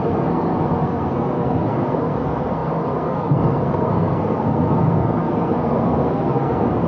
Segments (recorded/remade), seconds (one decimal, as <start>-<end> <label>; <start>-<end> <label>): 0.0-6.9 remade